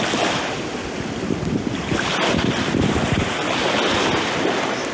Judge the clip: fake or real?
real